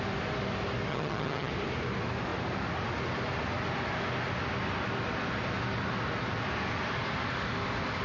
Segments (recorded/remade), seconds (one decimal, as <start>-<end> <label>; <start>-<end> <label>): 0.0-0.9 recorded; 0.9-1.5 remade; 1.5-8.0 recorded